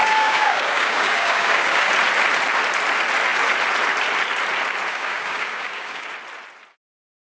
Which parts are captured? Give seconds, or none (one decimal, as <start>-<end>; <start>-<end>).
1.9-4.9; 6.1-7.3